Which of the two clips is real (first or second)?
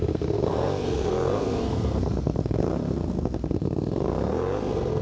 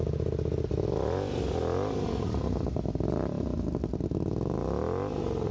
second